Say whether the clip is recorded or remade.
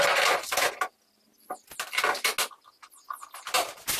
recorded